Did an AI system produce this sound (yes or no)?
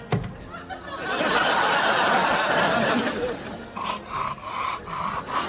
no